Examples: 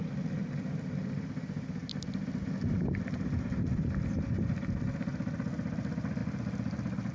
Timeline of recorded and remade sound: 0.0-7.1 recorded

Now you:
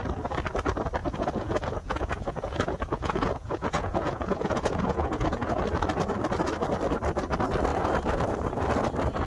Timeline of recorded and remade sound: 0.0-1.0 recorded; 1.0-5.6 remade; 5.6-9.3 recorded

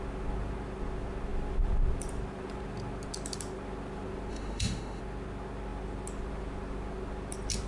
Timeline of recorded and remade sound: 0.0-4.3 recorded; 4.3-5.0 remade; 5.0-7.7 recorded

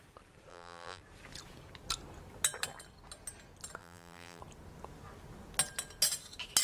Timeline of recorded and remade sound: 0.0-0.5 recorded; 0.5-1.0 remade; 1.0-3.8 recorded; 3.8-4.4 remade; 4.4-6.6 recorded

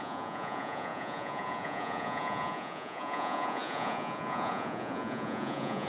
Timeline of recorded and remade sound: 0.0-5.9 remade